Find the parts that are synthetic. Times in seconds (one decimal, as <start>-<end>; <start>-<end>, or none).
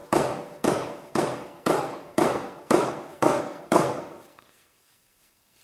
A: 0.0-5.6